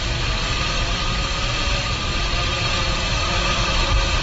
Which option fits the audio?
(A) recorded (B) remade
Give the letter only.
A